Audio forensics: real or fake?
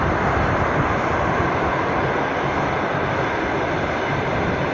real